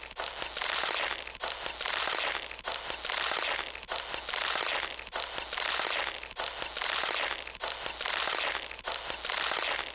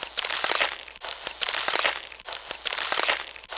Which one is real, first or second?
first